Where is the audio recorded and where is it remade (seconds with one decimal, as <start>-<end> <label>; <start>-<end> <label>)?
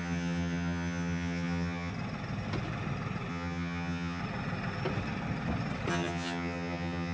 0.0-1.9 remade; 1.9-3.3 recorded; 3.3-4.2 remade; 4.2-5.9 recorded; 5.9-7.1 remade